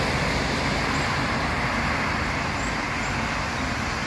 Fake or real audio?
real